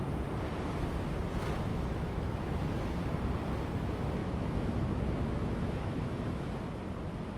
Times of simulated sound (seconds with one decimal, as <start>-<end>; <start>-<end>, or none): 1.7-2.9; 4.2-6.5